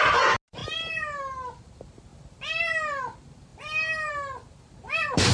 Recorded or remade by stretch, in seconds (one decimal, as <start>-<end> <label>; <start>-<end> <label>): 0.0-5.3 recorded